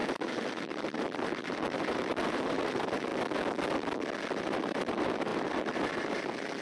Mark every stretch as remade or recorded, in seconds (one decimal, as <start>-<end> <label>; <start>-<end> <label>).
0.0-3.1 remade; 3.1-4.4 recorded; 4.4-6.6 remade